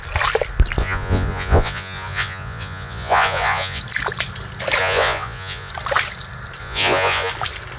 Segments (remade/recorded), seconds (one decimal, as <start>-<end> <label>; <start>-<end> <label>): 0.0-0.8 recorded; 0.8-3.8 remade; 3.8-4.8 recorded; 4.8-5.7 remade; 5.7-6.6 recorded; 6.6-7.3 remade; 7.3-7.8 recorded